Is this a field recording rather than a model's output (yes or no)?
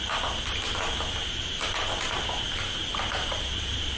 yes